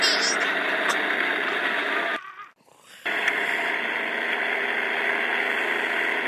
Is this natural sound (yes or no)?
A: yes